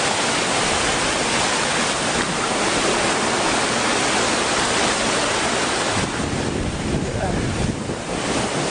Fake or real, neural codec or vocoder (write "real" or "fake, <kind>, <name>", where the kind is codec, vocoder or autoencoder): real